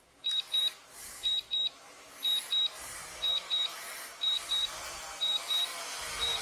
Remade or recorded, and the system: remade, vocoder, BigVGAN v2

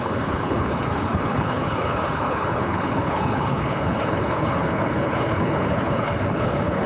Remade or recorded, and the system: remade, codec, HILCodec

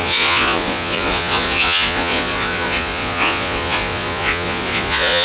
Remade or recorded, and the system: remade, vocoder, Vocos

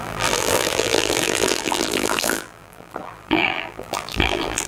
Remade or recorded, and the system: remade, vocoder, BigVGAN v2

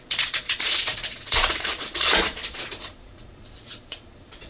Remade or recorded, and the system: remade, vocoder, Vocos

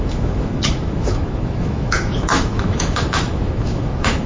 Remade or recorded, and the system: remade, autoencoder, DAC-VAE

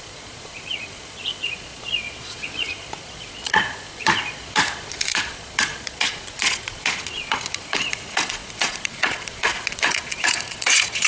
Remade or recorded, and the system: remade, vocoder, Vocos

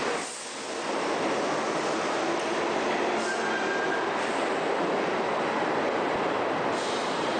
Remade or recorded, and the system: recorded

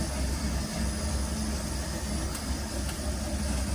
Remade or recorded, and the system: recorded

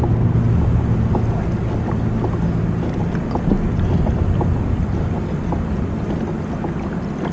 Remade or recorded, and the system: recorded